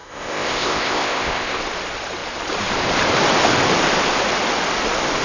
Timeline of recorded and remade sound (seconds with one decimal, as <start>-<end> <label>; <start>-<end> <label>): 0.0-1.6 remade; 1.6-5.2 recorded